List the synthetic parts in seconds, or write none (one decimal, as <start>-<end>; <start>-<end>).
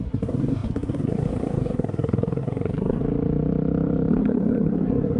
0.0-3.0; 4.1-5.2